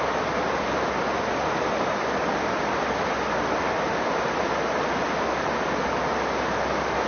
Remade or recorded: recorded